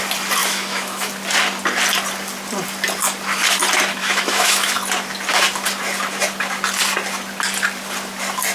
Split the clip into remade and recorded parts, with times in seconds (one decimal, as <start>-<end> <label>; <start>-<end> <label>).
0.0-0.4 recorded; 0.4-1.1 remade; 1.1-4.0 recorded; 4.0-4.7 remade; 4.7-8.5 recorded